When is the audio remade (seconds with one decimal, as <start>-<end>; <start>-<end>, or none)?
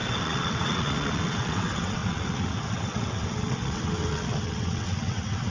0.0-5.5